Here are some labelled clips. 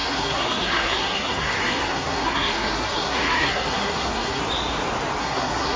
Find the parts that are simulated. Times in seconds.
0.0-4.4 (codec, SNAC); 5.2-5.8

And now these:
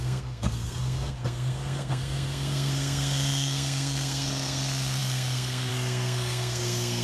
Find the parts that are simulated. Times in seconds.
0.0-7.0 (codec, SNAC)

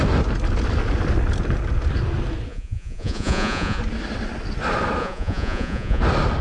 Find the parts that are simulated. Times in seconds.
2.5-3.8 (vocoder, Vocos); 5.0-6.0

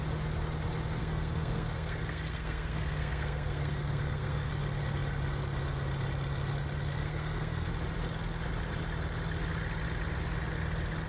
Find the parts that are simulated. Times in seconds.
1.0-4.5 (codec, SNAC); 6.9-7.7

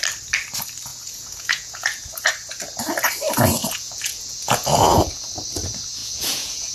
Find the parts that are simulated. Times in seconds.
0.9-2.3 (vocoder, Vocos); 3.6-5.3; 6.0-6.7

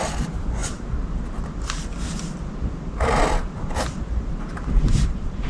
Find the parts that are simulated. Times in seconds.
0.0-0.6 (vocoder, BigVGAN v2); 3.4-5.5

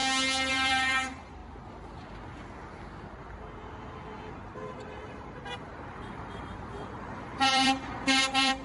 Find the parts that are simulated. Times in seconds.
0.5-1.4 (vocoder, BigVGAN v2); 3.1-3.6; 4.3-8.6

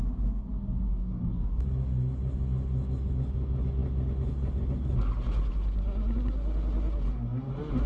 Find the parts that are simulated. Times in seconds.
0.9-1.6 (codec, DAC)